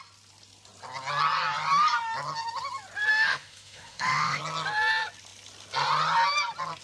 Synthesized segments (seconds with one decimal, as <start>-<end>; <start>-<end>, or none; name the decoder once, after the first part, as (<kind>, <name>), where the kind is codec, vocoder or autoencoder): 3.1-4.4 (autoencoder, DAC-VAE)